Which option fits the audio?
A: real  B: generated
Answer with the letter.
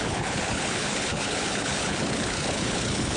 B